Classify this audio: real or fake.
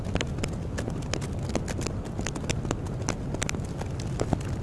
real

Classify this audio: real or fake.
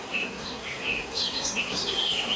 fake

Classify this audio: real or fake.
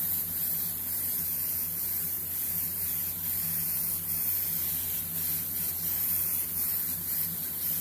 real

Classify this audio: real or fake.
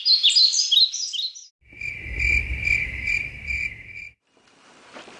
real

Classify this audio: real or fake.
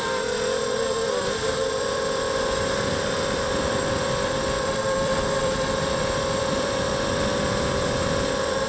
fake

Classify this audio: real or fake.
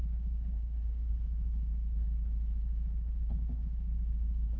fake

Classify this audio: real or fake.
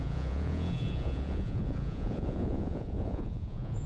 fake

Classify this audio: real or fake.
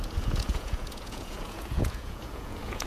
fake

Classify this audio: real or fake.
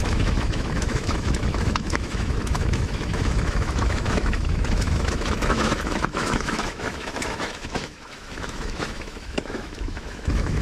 fake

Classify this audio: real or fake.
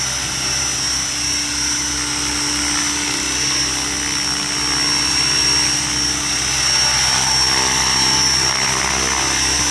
real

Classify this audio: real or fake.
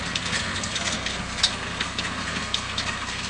fake